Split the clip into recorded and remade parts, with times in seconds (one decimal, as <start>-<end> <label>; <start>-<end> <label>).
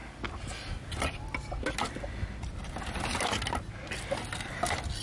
0.0-5.0 recorded